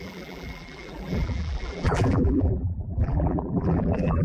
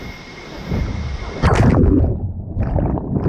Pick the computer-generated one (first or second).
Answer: first